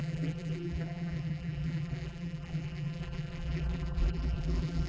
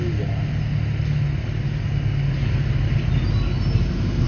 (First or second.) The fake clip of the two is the first